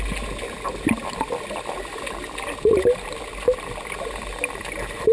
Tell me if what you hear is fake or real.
real